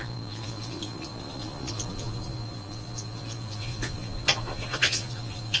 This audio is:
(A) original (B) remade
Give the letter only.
B